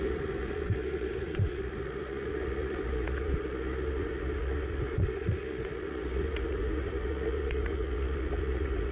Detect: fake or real fake